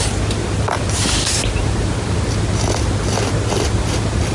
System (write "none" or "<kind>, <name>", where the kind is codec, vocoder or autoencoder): none